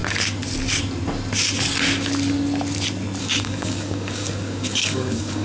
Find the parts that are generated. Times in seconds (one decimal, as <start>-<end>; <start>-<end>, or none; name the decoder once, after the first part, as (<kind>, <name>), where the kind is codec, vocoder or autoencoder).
3.2-5.4 (codec, DAC)